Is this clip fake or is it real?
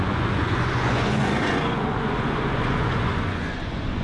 fake